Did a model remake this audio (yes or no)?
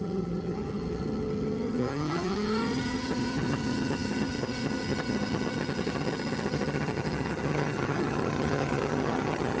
yes